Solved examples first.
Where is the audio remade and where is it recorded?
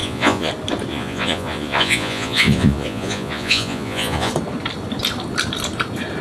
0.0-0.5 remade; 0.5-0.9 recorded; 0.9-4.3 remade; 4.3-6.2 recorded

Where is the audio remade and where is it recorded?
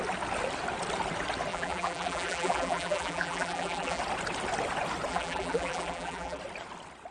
0.0-1.5 recorded; 1.5-4.0 remade; 4.0-5.1 recorded; 5.1-6.4 remade; 6.4-7.1 recorded